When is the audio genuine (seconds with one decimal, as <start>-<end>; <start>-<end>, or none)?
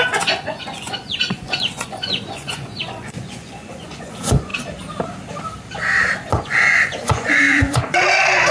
4.5-6.3